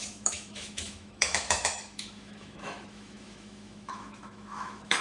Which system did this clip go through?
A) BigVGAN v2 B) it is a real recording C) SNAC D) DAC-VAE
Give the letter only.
D